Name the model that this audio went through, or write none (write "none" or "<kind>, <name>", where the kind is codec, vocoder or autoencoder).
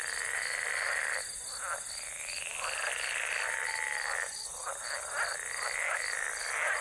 none